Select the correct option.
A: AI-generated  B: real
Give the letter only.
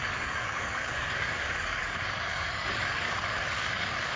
A